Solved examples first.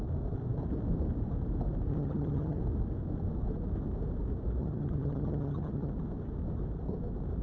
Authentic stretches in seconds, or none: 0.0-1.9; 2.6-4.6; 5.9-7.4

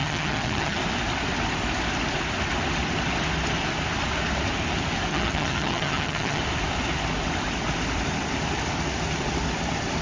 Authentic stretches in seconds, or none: 0.8-5.1; 6.4-10.0

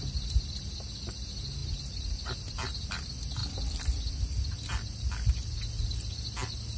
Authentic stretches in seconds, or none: 0.0-6.8